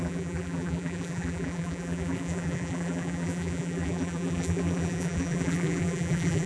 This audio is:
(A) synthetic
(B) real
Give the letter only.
A